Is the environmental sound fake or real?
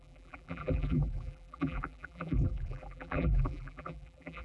fake